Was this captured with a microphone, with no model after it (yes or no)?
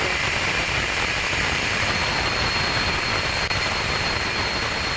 no